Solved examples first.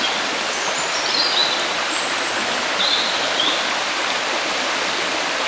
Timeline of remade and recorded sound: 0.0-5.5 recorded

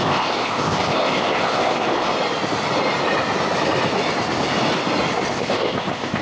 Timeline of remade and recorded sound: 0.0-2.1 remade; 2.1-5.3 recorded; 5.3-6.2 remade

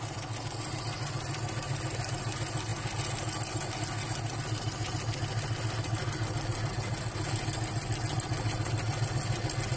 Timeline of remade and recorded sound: 0.0-9.8 recorded

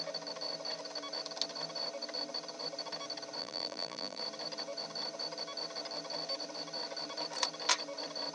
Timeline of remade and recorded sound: 0.0-3.4 recorded; 3.4-4.2 remade; 4.2-8.3 recorded